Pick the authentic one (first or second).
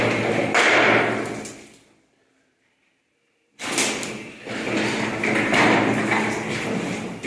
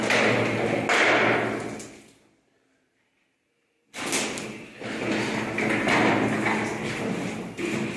second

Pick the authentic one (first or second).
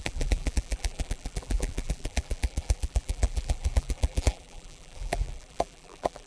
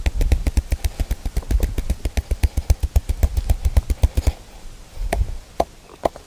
second